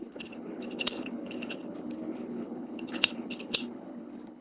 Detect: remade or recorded remade